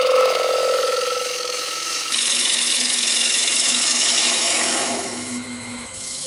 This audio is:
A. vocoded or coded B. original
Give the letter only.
A